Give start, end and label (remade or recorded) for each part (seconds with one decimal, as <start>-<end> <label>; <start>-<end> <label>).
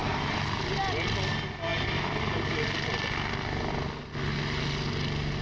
0.0-5.4 recorded